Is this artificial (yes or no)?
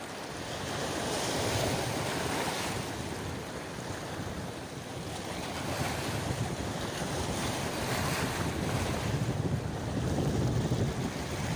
no